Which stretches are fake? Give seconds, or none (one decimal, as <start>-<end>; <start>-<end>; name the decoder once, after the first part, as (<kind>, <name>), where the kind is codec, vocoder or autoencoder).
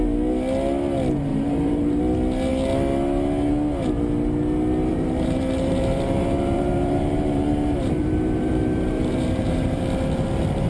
1.3-2.0 (vocoder, BigVGAN v2); 4.9-9.8